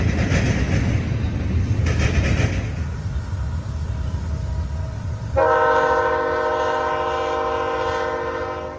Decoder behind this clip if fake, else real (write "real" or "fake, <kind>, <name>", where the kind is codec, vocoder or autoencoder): real